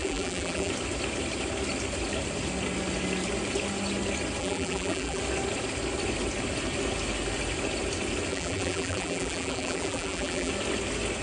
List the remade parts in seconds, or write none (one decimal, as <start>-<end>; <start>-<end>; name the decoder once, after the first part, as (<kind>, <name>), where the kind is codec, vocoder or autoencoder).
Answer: 0.0-0.7 (vocoder, BigVGAN v2); 4.4-5.2; 8.3-10.5